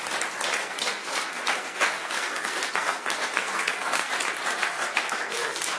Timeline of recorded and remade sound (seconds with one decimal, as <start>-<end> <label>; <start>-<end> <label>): 0.0-0.6 recorded; 0.6-4.1 remade; 4.1-4.6 recorded; 4.6-5.8 remade